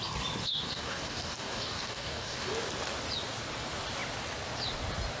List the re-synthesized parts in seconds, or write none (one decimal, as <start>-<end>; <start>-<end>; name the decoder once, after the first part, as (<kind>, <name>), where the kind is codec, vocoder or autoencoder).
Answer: 0.4-2.5 (codec, DAC)